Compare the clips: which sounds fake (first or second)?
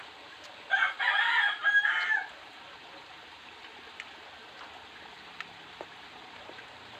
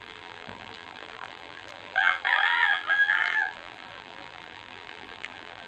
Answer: second